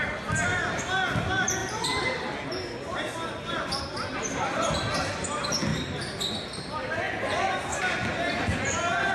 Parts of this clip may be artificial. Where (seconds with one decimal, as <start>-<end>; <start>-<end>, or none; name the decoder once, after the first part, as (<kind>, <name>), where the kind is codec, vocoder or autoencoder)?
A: none